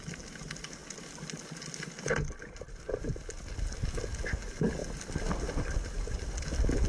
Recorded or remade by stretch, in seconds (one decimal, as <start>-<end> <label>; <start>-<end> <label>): 0.0-4.8 recorded; 4.8-6.5 remade; 6.5-6.9 recorded